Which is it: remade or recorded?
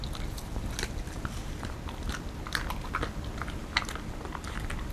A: recorded